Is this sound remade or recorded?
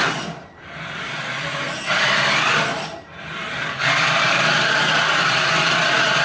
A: recorded